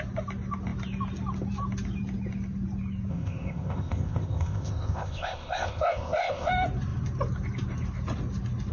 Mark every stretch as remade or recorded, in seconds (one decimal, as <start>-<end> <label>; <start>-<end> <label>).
0.0-3.1 recorded; 3.1-6.5 remade; 6.5-8.7 recorded

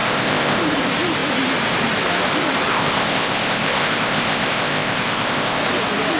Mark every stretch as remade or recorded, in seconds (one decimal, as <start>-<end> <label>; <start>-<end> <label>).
0.0-0.6 remade; 0.6-2.7 recorded; 2.7-5.6 remade; 5.6-6.2 recorded

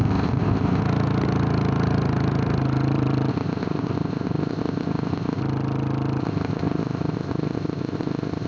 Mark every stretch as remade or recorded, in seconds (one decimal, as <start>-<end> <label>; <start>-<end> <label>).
0.0-0.8 remade; 0.8-3.3 recorded; 3.3-5.4 remade; 5.4-6.2 recorded; 6.2-8.5 remade

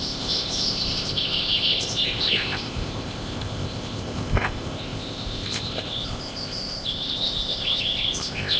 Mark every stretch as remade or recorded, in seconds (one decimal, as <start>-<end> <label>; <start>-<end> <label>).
0.0-8.6 remade

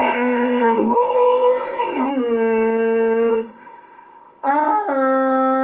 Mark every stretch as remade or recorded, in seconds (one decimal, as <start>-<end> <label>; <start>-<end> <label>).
0.0-2.1 remade; 2.1-3.3 recorded; 3.3-4.5 remade; 4.5-5.6 recorded

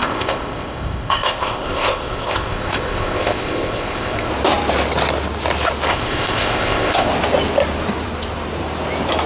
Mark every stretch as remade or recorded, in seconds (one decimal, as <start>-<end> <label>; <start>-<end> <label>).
0.0-4.3 remade; 4.3-5.9 recorded; 5.9-7.1 remade; 7.1-9.3 recorded

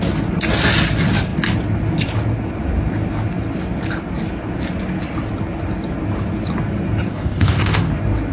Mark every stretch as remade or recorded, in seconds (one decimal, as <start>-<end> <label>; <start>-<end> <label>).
0.0-7.1 recorded; 7.1-7.9 remade; 7.9-8.3 recorded